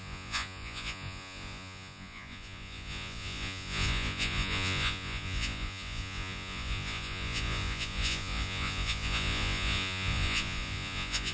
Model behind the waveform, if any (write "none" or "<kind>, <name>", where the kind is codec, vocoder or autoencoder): vocoder, Vocos